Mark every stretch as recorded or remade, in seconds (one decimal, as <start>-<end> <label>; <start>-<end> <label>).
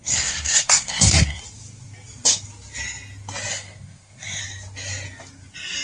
0.0-1.4 remade; 1.4-3.5 recorded; 3.5-4.4 remade; 4.4-5.8 recorded